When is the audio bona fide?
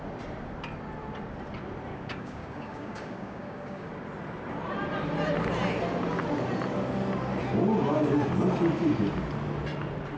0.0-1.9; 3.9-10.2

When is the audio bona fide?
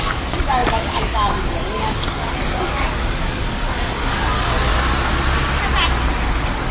4.7-6.7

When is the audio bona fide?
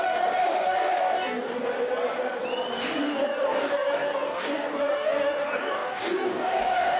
1.6-3.0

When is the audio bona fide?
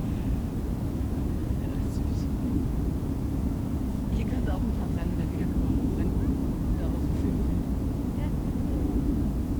0.0-3.9; 6.0-9.6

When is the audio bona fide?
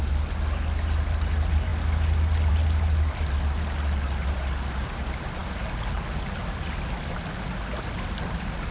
0.0-8.7